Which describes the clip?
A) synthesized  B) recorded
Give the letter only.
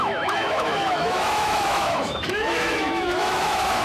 A